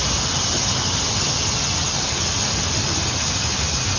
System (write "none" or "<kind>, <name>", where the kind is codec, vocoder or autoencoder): none